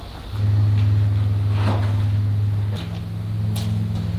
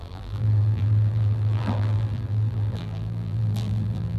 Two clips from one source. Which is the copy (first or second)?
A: second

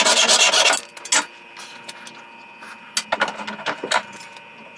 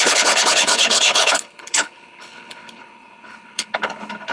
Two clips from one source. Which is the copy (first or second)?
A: second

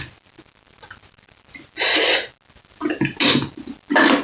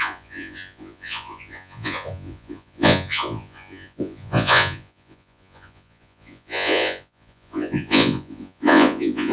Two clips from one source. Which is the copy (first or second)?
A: second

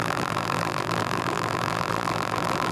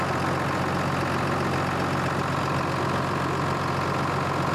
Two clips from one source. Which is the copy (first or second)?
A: first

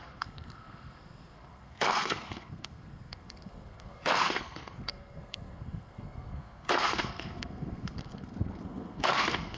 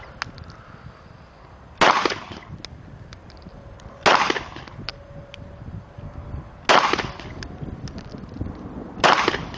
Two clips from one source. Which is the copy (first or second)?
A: first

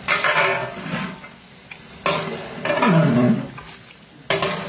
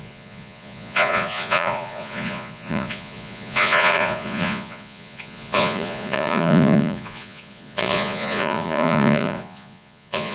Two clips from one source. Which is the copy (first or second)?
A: second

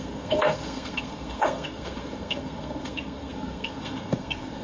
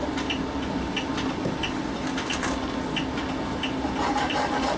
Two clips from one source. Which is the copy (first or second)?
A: first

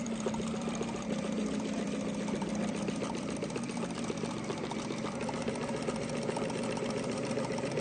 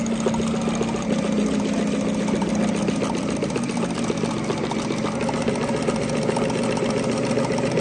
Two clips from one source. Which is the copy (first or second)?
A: first